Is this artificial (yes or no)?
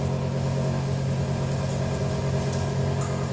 no